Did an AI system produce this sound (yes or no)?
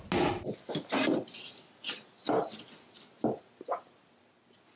no